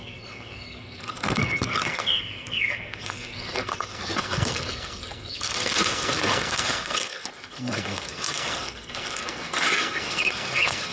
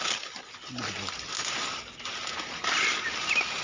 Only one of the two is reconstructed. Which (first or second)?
first